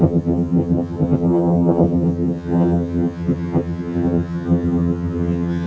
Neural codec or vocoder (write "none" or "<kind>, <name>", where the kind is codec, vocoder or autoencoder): vocoder, HiFi-GAN